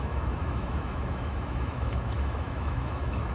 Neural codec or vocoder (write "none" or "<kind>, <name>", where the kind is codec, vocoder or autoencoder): autoencoder, DAC-VAE